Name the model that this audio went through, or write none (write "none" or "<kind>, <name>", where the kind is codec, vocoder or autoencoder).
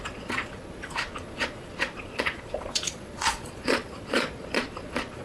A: vocoder, Vocos